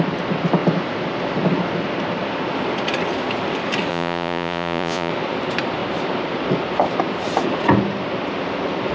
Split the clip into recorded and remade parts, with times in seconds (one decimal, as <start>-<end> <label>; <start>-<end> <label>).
0.0-3.9 recorded; 3.9-5.1 remade; 5.1-8.9 recorded